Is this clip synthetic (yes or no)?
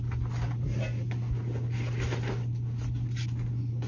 no